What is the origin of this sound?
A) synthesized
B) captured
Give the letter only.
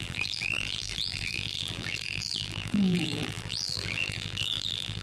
A